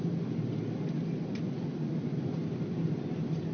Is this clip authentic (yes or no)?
yes